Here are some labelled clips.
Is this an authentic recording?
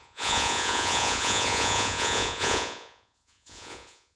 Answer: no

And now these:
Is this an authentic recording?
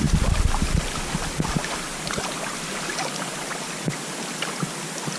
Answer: yes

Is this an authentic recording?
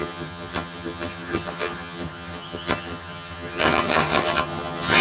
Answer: no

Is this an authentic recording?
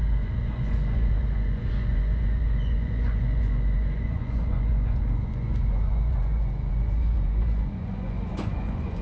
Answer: no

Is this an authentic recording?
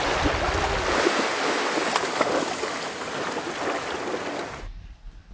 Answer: yes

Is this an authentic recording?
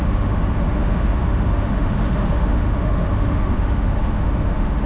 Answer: no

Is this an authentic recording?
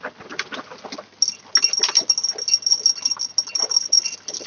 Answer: yes